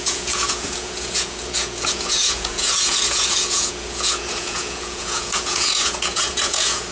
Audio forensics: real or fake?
fake